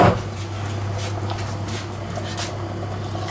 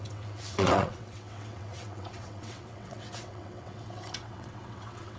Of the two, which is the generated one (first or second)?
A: second